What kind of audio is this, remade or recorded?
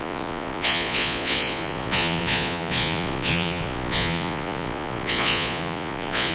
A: remade